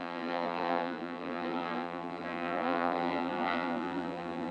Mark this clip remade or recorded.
remade